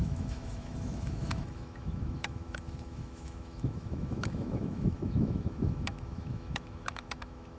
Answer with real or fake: fake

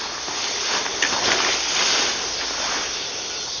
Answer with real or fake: real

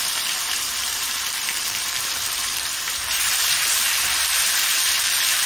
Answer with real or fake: fake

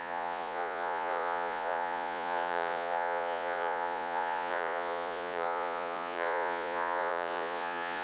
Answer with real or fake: fake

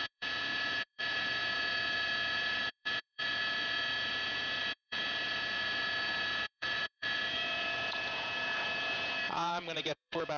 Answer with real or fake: fake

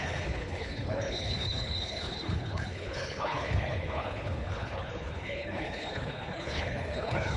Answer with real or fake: fake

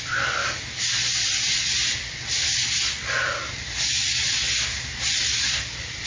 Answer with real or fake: real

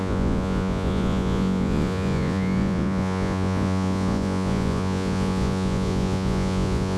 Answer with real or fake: fake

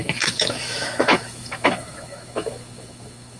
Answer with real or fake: fake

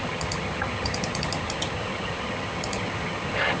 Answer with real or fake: fake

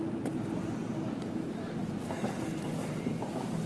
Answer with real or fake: real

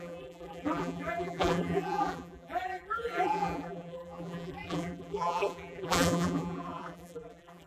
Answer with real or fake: fake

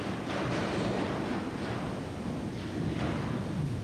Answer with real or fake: real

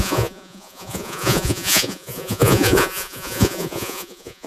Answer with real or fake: fake